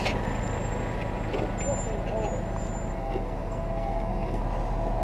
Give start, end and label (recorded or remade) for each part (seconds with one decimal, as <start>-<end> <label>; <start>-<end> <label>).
0.0-2.9 recorded; 2.9-4.4 remade; 4.4-5.0 recorded